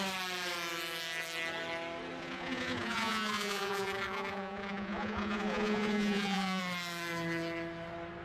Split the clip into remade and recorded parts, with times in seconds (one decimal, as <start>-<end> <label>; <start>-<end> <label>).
0.0-2.2 recorded; 2.2-6.6 remade; 6.6-8.2 recorded